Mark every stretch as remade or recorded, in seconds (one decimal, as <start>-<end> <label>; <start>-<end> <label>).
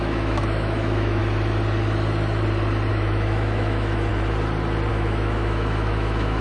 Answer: 0.0-1.2 remade; 1.2-2.9 recorded; 2.9-4.1 remade; 4.1-4.9 recorded; 4.9-6.4 remade